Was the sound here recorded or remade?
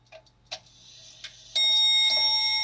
recorded